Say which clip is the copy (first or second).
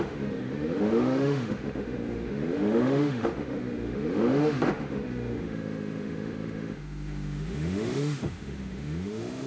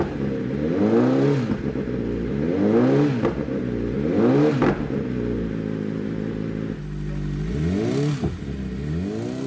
first